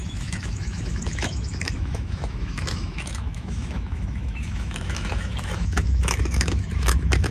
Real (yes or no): no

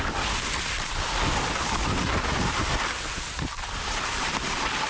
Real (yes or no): yes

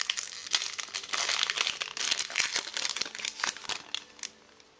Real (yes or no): yes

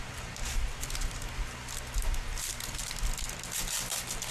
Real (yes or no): yes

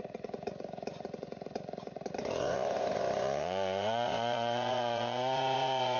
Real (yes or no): no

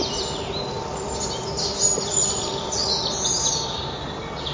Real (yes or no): yes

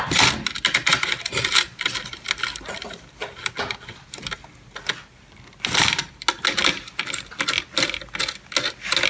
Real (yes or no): yes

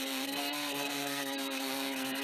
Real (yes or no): no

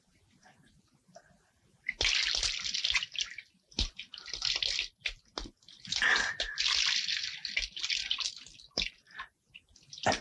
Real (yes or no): yes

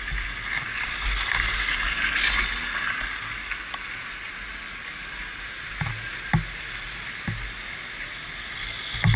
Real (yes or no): yes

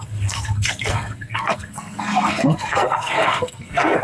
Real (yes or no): no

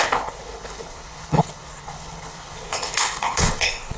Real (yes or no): no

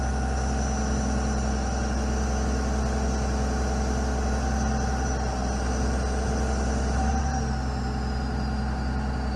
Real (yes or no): yes